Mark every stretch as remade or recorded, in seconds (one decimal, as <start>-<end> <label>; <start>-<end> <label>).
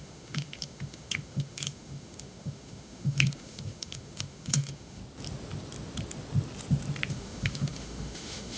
0.0-5.0 remade; 5.0-7.1 recorded; 7.1-8.6 remade